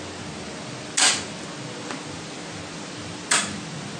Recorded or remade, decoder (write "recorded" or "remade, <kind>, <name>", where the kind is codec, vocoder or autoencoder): recorded